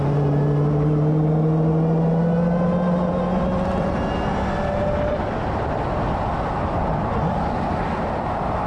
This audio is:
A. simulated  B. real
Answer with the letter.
B